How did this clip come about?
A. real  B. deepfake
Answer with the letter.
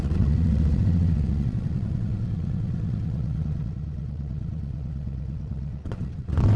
B